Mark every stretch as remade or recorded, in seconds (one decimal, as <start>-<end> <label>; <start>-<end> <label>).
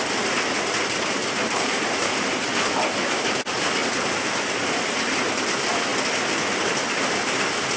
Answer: 0.0-1.2 recorded; 1.2-2.4 remade; 2.4-7.8 recorded